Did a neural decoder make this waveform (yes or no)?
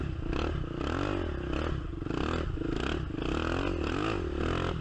no